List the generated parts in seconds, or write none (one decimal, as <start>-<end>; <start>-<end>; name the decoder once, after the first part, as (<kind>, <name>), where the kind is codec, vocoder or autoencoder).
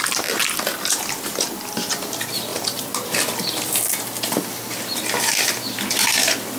0.4-1.1 (vocoder, BigVGAN v2); 2.5-4.6